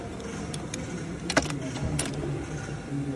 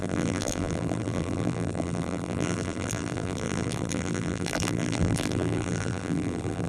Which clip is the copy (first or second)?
second